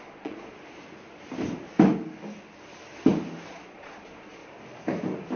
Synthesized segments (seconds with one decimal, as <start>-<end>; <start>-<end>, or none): 0.0-0.5; 3.5-4.4